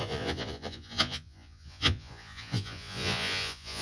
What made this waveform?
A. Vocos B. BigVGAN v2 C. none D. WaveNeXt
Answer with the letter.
A